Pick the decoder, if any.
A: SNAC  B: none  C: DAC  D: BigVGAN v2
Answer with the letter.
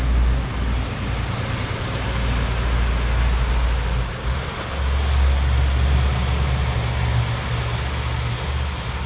B